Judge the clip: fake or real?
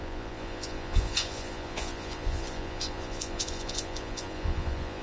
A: fake